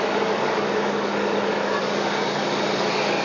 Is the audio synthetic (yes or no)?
yes